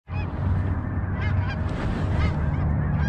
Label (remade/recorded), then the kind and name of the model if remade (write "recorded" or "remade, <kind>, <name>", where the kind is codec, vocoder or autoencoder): recorded